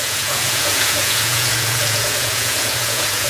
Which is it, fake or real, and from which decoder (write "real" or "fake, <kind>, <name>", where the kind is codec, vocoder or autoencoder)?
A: fake, vocoder, Vocos